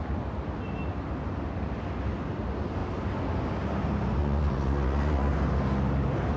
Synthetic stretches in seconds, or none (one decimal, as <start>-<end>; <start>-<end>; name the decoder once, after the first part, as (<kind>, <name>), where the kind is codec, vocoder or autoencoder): 4.2-5.3 (vocoder, Vocos)